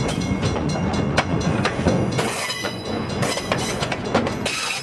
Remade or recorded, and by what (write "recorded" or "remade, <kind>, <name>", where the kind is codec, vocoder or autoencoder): remade, vocoder, Vocos